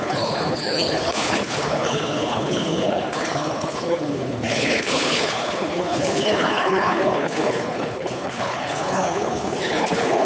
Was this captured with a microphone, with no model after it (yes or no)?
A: no